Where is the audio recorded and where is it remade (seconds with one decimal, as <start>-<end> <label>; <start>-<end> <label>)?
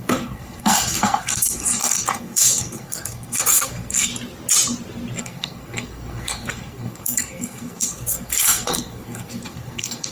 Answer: 0.0-4.1 remade; 4.1-5.2 recorded; 5.2-10.1 remade